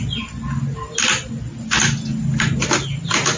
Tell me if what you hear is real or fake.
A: real